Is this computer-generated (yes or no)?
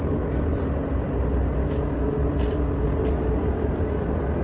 no